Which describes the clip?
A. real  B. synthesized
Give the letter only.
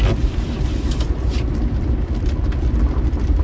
B